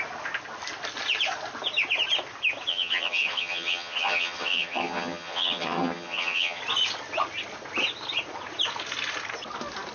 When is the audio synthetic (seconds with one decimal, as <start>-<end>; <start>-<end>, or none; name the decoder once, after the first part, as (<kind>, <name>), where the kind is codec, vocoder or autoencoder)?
2.7-6.6 (vocoder, HiFi-GAN)

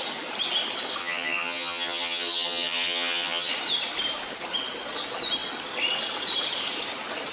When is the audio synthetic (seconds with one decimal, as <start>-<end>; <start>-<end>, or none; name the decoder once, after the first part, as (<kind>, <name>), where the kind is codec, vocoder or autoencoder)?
1.0-3.5 (vocoder, HiFi-GAN)

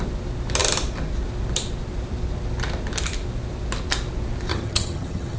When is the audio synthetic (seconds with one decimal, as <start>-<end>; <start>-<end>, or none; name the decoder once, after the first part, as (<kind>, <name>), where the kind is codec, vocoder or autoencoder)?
4.5-5.4 (vocoder, HiFi-GAN)